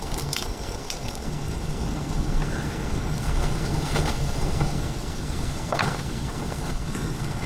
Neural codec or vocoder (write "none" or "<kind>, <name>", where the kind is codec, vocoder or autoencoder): codec, SNAC